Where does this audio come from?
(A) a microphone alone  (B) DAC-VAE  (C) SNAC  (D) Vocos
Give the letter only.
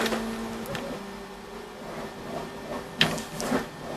A